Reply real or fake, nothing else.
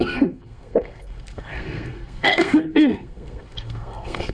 fake